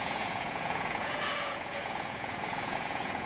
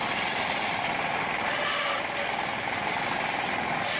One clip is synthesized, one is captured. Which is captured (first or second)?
second